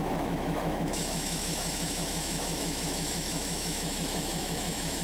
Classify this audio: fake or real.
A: fake